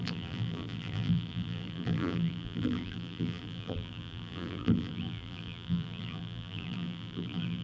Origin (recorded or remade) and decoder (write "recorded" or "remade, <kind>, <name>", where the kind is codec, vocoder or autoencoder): remade, vocoder, BigVGAN v2